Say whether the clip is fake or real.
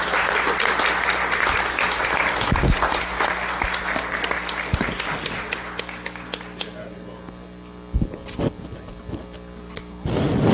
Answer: real